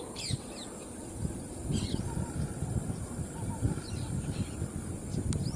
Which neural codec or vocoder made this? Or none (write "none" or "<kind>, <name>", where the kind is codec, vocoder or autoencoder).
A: none